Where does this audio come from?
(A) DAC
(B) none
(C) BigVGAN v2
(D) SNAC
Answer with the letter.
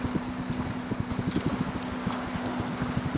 B